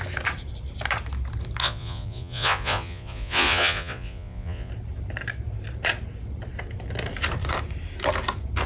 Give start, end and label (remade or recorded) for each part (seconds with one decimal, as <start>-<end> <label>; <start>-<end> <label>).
0.0-1.6 recorded; 1.6-4.7 remade; 4.7-8.7 recorded